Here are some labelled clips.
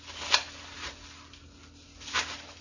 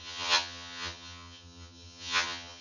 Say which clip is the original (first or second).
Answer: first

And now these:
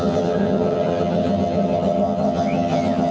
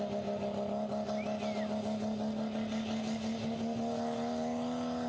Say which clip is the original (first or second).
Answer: second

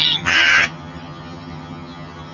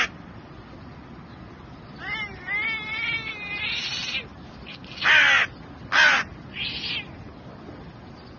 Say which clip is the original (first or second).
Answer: second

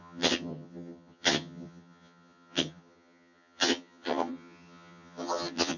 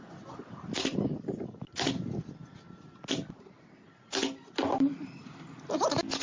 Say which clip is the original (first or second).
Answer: second